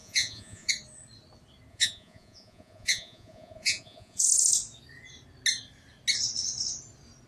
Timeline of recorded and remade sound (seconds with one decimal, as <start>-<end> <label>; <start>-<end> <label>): 0.0-0.7 remade; 0.7-1.7 recorded; 1.7-4.3 remade; 4.3-7.3 recorded